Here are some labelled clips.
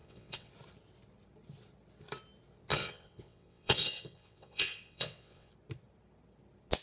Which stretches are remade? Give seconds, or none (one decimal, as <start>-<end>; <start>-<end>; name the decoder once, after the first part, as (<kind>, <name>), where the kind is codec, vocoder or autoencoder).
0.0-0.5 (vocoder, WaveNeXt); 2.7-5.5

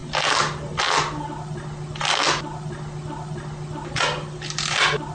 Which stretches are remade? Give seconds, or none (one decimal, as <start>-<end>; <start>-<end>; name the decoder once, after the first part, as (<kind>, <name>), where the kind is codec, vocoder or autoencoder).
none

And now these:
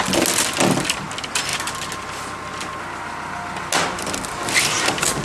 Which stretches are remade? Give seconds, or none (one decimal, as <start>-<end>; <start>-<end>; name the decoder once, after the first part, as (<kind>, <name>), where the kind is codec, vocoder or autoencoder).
none

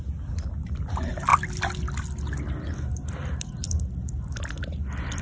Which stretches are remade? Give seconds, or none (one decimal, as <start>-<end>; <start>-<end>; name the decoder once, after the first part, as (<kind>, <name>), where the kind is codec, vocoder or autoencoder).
none

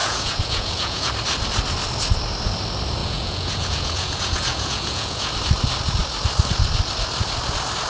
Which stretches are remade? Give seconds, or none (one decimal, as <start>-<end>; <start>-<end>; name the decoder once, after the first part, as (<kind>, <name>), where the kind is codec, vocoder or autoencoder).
0.0-1.1 (vocoder, Vocos); 3.0-5.3